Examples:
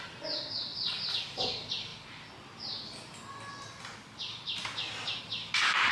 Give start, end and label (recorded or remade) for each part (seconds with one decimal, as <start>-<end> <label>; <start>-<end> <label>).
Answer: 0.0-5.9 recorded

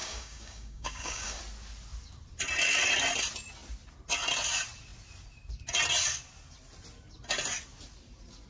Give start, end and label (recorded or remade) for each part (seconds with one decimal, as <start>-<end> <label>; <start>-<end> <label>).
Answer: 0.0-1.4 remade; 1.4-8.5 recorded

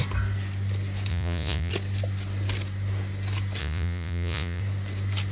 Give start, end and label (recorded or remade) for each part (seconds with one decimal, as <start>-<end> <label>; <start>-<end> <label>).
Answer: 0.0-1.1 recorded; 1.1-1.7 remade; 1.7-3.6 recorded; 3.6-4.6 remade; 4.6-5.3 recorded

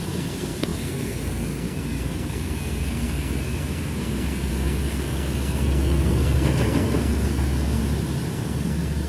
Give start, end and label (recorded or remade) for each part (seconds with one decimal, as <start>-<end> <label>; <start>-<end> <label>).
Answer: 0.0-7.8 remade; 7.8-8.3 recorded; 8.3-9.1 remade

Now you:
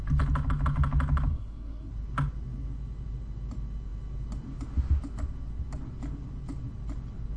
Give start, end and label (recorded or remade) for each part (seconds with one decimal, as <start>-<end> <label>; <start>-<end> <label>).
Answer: 0.0-1.3 recorded; 1.3-1.9 remade; 1.9-7.4 recorded